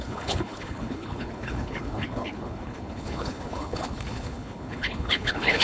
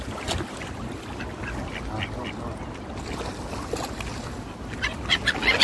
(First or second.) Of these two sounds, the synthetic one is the first